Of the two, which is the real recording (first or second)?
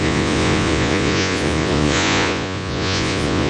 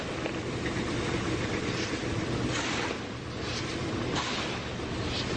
second